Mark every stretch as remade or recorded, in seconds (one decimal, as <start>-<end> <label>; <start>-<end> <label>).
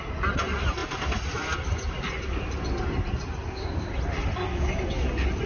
0.0-5.5 recorded